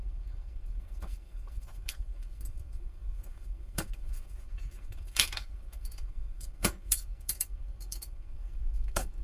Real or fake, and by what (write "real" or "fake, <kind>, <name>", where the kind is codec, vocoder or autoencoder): fake, codec, SNAC